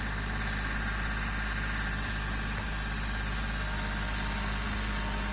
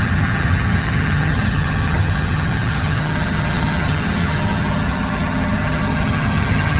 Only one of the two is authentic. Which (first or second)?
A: first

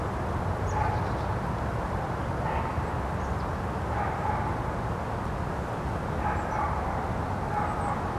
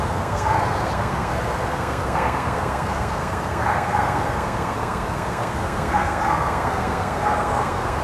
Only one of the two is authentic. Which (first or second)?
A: first